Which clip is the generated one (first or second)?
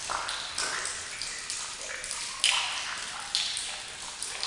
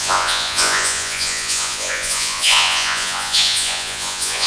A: second